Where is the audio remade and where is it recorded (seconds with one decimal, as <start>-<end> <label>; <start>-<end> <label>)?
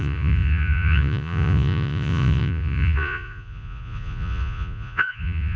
0.0-5.6 remade